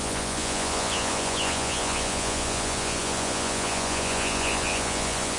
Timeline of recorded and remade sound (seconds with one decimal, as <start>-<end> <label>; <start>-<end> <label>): 0.0-5.4 remade